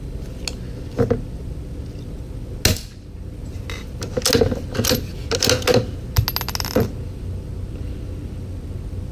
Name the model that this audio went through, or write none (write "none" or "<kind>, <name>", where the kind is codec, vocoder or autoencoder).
none